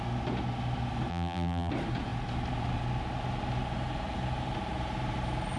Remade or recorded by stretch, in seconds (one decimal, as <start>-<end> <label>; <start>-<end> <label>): 0.0-1.1 recorded; 1.1-1.7 remade; 1.7-5.6 recorded